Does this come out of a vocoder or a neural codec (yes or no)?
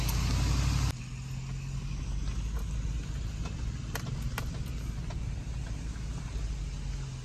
no